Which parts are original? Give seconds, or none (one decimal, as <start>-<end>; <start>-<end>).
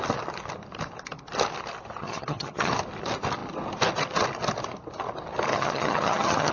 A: 0.0-2.0; 2.7-5.5